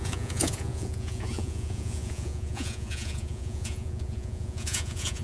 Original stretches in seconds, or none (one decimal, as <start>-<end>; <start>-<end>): none